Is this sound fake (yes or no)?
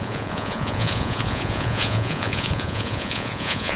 yes